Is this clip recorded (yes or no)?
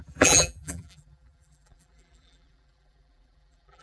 no